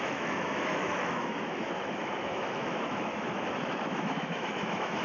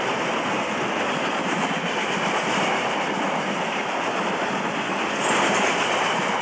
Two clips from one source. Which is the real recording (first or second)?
second